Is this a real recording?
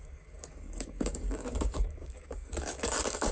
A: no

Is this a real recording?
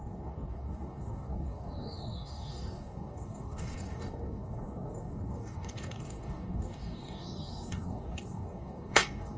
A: no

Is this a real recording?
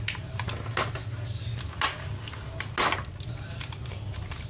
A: yes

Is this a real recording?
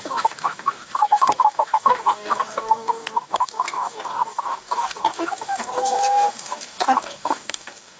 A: no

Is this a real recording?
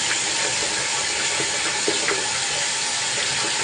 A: yes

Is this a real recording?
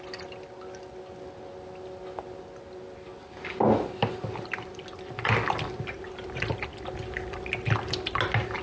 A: yes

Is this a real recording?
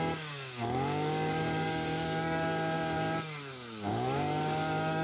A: no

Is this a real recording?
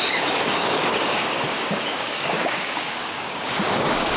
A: no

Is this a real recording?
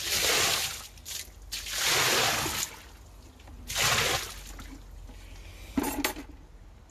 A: yes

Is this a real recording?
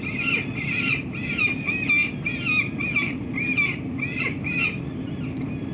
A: yes